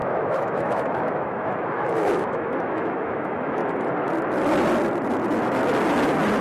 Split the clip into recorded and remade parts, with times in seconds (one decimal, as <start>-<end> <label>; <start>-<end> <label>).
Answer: 0.0-3.6 remade; 3.6-6.4 recorded